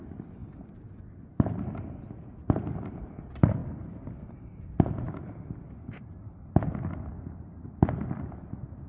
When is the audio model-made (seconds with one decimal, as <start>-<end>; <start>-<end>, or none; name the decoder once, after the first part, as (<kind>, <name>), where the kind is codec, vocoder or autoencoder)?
none

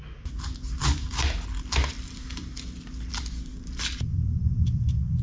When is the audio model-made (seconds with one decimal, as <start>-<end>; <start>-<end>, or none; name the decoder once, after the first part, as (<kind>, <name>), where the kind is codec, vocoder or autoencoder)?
4.1-4.8 (vocoder, BigVGAN v2)

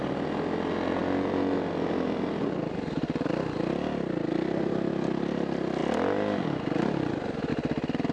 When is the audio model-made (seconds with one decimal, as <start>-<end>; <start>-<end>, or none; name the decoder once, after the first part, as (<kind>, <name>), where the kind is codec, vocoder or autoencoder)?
none

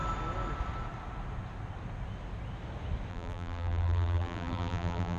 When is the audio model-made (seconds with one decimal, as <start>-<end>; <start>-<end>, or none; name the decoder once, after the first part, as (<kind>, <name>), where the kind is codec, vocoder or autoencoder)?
3.1-5.2 (vocoder, BigVGAN v2)